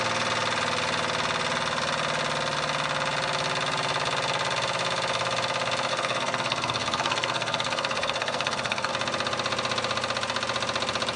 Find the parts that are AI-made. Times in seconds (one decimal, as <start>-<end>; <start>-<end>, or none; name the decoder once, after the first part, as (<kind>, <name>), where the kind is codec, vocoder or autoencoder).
5.9-8.9 (codec, SNAC)